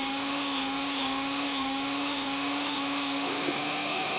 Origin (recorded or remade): remade